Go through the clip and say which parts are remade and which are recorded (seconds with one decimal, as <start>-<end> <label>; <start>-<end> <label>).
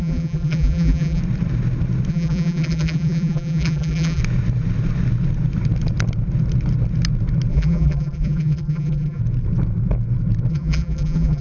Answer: 0.0-1.2 remade; 1.2-2.1 recorded; 2.1-4.2 remade; 4.2-7.5 recorded; 7.5-9.2 remade; 9.2-10.5 recorded; 10.5-11.4 remade